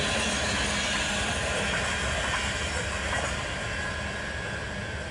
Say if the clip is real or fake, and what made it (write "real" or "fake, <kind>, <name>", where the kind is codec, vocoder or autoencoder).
real